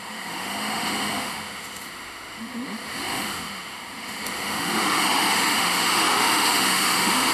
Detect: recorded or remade remade